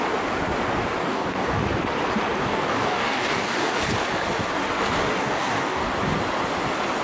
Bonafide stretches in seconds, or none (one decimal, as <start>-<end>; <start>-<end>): 0.0-1.0; 1.6-2.4; 3.8-5.2; 5.9-7.0